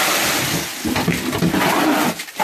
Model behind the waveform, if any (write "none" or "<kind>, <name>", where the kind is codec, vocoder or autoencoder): none